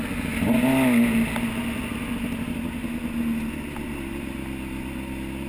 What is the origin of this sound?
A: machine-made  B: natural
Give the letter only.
B